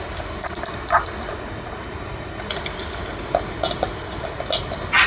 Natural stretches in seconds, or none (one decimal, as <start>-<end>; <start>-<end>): 0.0-1.3; 2.5-5.1